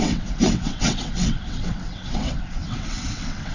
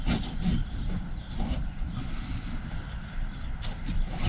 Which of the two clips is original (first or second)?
second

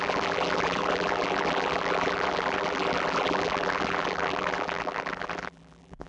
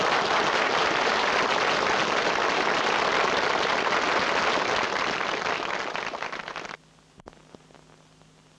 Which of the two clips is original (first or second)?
second